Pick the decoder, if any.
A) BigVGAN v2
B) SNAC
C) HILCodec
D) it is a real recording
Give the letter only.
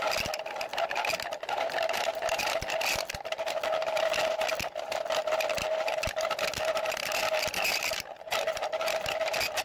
D